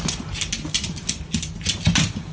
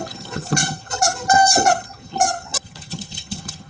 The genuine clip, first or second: first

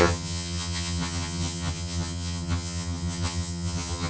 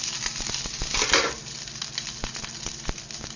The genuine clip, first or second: second